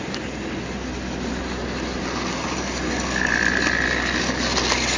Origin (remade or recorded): recorded